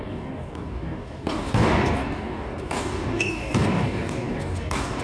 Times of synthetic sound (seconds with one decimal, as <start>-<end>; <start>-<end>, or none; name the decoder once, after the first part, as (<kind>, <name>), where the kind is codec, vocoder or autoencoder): 0.0-5.0 (codec, DAC)